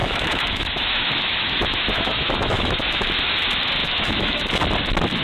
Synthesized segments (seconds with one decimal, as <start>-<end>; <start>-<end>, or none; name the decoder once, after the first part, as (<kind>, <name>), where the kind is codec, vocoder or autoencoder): 0.0-3.1 (autoencoder, DAC-VAE); 3.8-4.5